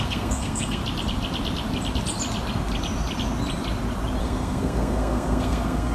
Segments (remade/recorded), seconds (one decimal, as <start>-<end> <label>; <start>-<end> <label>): 0.0-0.8 remade; 0.8-4.2 recorded; 4.2-5.9 remade